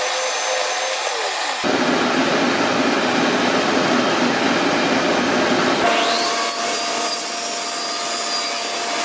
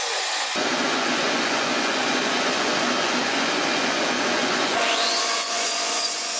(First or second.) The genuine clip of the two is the first